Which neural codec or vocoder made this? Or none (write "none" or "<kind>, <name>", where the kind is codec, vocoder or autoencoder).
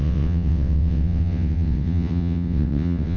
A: vocoder, WaveNeXt